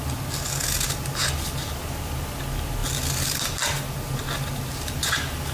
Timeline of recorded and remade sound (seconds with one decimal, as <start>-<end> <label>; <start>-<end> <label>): 0.0-5.5 recorded